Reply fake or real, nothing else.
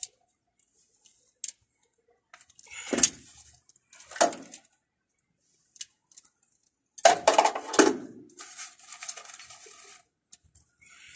real